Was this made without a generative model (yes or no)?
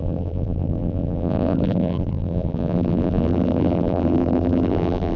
no